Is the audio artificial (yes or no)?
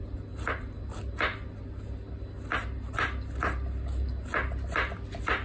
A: no